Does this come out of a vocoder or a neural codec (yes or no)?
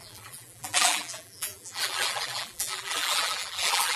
yes